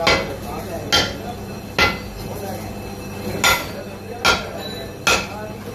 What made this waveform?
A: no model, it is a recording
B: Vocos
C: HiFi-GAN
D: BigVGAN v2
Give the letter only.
A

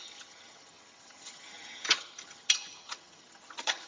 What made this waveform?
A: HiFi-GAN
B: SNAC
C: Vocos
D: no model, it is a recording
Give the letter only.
A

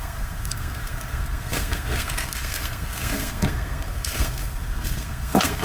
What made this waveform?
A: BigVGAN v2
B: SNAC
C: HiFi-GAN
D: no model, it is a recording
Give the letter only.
B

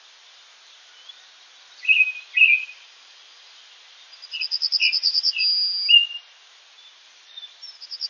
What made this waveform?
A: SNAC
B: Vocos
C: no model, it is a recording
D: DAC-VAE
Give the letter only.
C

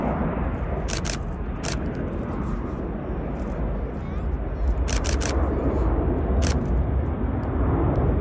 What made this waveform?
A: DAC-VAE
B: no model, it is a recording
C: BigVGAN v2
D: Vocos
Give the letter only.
B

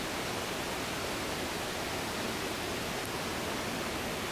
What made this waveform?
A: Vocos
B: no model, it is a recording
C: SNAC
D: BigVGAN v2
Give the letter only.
B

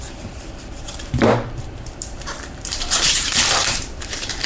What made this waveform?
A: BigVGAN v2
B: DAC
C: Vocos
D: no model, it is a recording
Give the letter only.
A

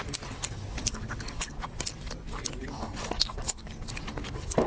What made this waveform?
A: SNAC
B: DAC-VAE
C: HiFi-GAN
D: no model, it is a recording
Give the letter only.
D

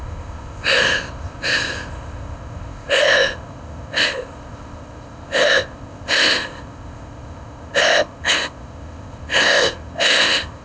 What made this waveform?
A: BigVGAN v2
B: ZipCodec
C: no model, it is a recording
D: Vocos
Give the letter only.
B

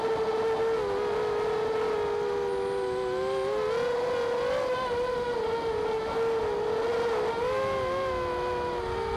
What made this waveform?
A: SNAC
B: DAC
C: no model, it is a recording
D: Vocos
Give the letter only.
C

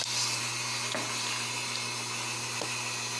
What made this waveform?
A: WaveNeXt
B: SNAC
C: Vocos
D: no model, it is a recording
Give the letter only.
D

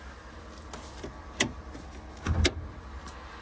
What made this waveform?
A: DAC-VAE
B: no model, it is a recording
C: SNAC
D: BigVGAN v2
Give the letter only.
B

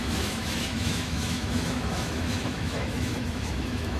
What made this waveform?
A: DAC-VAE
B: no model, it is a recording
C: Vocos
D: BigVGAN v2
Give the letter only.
A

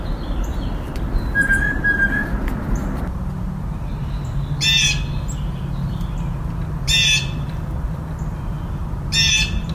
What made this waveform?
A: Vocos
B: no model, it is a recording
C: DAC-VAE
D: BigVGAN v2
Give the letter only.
B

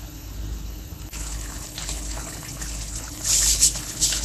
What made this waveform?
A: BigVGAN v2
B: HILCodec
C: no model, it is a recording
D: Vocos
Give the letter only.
B